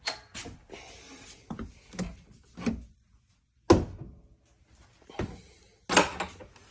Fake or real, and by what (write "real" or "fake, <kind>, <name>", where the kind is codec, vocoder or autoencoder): real